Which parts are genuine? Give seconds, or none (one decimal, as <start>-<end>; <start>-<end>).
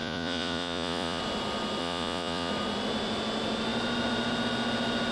1.2-1.8; 2.5-5.1